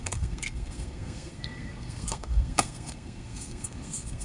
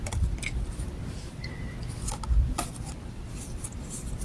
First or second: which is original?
second